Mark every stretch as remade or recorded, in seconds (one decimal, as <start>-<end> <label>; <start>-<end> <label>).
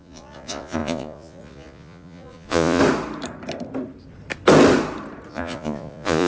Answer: 0.0-2.8 remade; 2.8-5.3 recorded; 5.3-6.3 remade